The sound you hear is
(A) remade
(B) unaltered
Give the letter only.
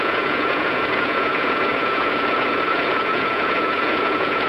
A